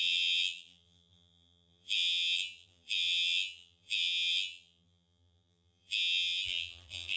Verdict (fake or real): fake